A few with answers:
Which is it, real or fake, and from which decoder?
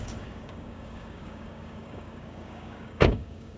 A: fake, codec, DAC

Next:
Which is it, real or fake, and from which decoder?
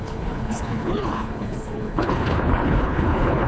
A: fake, codec, HILCodec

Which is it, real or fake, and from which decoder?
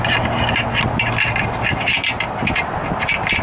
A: real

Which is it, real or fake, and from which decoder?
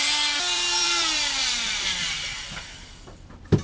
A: fake, vocoder, BigVGAN v2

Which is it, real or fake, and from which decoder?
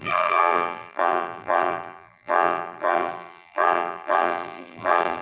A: fake, vocoder, BigVGAN v2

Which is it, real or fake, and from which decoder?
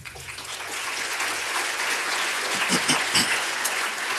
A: fake, vocoder, Vocos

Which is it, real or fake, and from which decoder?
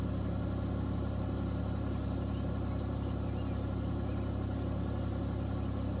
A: real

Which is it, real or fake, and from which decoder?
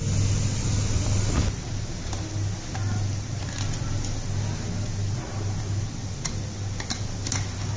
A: real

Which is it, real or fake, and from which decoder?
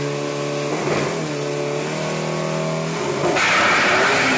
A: real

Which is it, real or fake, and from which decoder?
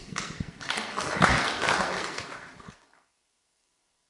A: fake, codec, SNAC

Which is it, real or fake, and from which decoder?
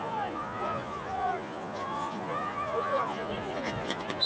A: fake, vocoder, Vocos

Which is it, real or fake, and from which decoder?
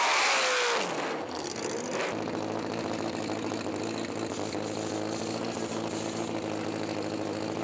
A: real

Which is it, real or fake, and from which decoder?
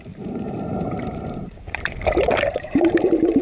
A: fake, vocoder, BigVGAN v2